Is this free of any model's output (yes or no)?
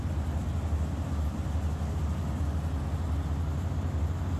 yes